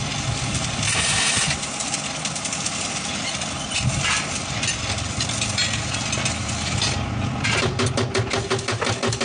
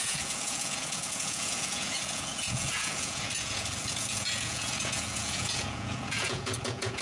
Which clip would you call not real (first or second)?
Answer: second